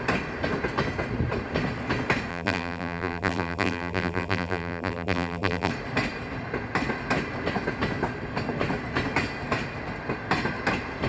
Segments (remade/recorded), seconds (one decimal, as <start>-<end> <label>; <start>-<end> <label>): 0.0-2.3 recorded; 2.3-5.7 remade; 5.7-11.1 recorded